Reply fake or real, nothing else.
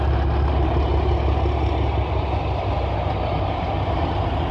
real